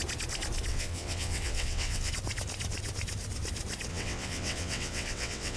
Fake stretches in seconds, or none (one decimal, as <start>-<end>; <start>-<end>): 0.7-2.1; 3.9-5.6